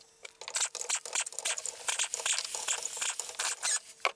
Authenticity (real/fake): real